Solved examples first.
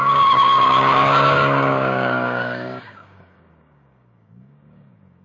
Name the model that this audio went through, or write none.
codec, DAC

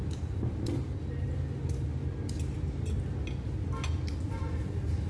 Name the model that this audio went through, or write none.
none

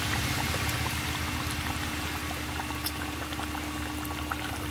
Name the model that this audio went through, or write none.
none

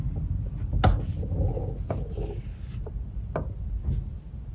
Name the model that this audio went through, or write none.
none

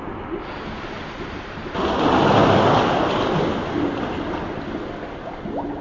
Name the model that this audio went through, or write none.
none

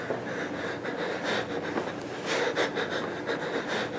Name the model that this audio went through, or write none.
none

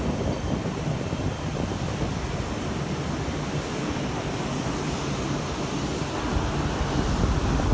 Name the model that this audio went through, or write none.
none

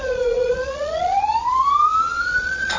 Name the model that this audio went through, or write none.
vocoder, Vocos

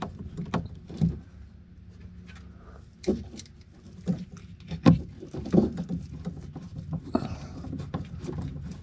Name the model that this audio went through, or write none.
none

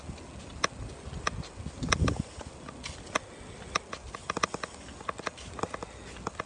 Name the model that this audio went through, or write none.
none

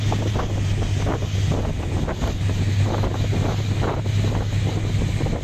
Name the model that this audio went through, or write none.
none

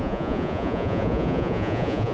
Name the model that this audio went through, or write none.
vocoder, Vocos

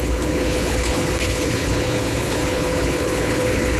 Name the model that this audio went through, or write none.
codec, HILCodec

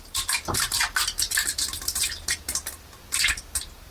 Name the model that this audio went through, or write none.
vocoder, BigVGAN v2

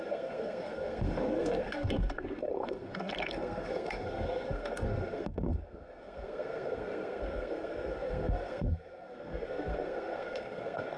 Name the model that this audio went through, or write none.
codec, SNAC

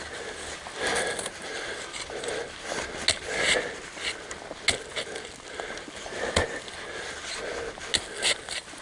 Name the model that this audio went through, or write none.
none